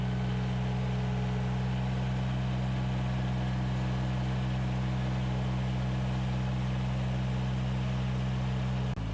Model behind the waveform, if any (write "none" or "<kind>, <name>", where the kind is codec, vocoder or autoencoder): none